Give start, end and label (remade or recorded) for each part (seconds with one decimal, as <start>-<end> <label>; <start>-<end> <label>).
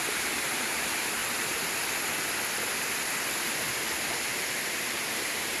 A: 0.0-1.2 remade; 1.2-4.6 recorded; 4.6-5.6 remade